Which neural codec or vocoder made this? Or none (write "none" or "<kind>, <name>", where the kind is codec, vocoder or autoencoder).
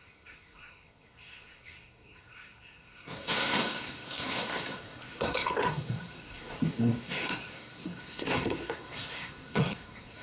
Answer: codec, SNAC